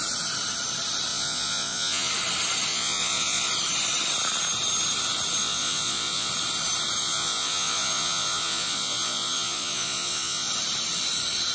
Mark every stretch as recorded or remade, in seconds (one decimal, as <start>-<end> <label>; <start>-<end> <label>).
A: 0.0-1.1 recorded; 1.1-2.1 remade; 2.1-2.7 recorded; 2.7-3.5 remade; 3.5-5.4 recorded; 5.4-6.3 remade; 6.3-7.0 recorded; 7.0-10.5 remade; 10.5-11.5 recorded